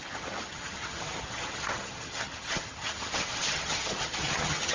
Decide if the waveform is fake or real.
fake